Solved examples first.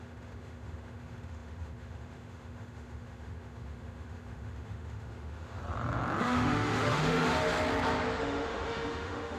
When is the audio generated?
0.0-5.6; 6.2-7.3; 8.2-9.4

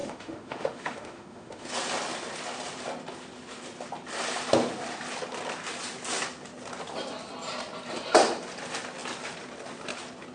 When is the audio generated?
0.0-1.7

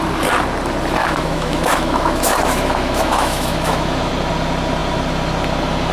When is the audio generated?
1.0-4.1

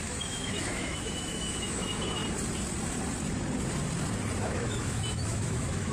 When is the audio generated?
0.0-2.2; 4.4-5.9

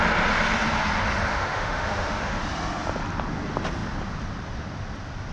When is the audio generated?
1.3-2.4